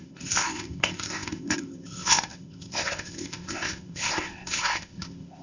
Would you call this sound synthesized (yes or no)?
yes